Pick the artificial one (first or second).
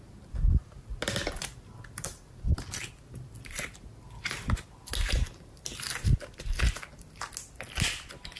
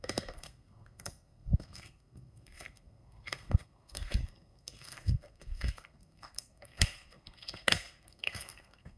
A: second